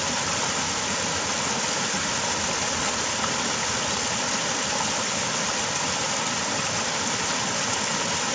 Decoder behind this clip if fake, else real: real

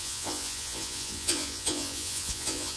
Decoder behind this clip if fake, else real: fake, vocoder, Vocos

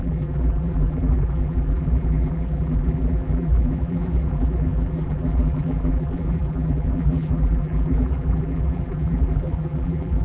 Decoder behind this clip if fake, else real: fake, vocoder, BigVGAN v2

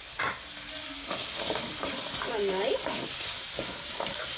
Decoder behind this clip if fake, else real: real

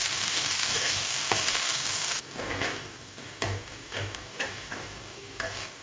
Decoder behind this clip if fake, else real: fake, codec, DAC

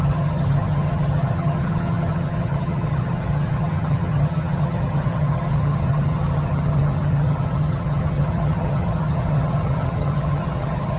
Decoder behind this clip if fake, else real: fake, vocoder, HiFi-GAN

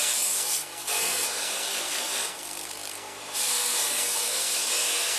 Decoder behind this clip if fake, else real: fake, codec, SNAC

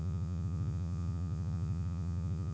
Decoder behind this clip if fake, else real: fake, vocoder, Vocos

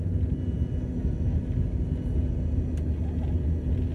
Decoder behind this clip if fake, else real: real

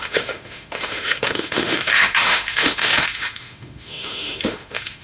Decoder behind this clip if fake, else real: fake, autoencoder, DAC-VAE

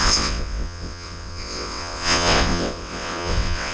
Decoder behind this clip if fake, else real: fake, vocoder, WaveNeXt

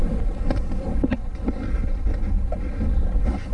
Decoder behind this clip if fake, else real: real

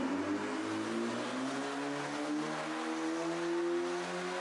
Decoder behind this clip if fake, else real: real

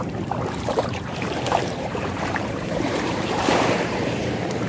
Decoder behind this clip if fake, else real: fake, vocoder, BigVGAN v2